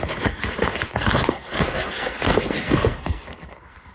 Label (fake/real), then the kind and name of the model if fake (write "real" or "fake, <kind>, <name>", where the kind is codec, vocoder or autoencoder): fake, codec, SNAC